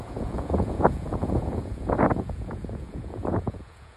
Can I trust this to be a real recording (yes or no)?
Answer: no